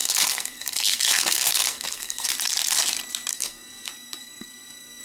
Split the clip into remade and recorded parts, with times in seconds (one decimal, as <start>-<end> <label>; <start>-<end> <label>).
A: 0.0-2.3 remade; 2.3-3.3 recorded; 3.3-5.0 remade